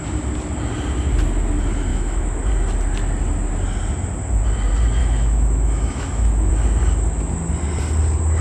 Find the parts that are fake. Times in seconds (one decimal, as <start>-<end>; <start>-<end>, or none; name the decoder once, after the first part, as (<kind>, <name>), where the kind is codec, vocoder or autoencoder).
1.9-2.4 (autoencoder, DAC-VAE); 5.0-6.5